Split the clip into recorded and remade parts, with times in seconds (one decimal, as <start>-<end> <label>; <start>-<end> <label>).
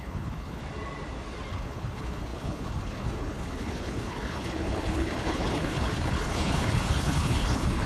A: 0.0-0.6 remade; 0.6-1.5 recorded; 1.5-7.9 remade